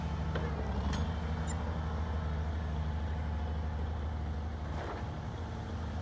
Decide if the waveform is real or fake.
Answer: real